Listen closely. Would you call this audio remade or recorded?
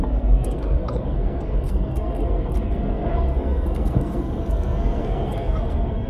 remade